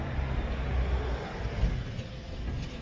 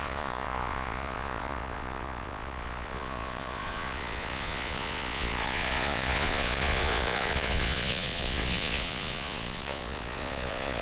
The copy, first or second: second